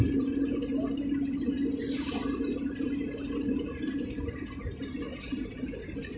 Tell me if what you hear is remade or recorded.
recorded